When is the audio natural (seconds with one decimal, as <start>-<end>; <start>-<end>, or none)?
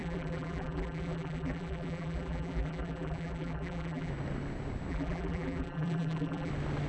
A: 4.1-4.9; 6.5-6.9